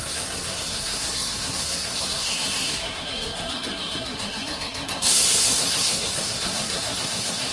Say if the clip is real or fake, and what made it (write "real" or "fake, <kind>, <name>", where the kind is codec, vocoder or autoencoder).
fake, codec, SNAC